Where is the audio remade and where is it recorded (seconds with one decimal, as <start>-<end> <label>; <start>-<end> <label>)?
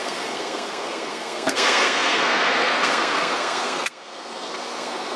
0.0-5.2 remade